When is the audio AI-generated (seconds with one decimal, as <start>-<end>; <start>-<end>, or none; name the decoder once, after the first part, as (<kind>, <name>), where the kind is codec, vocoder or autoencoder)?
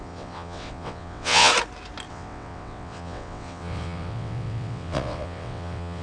0.0-1.5 (vocoder, WaveNeXt); 2.1-6.0